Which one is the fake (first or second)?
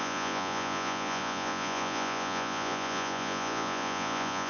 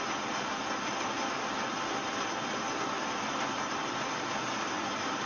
first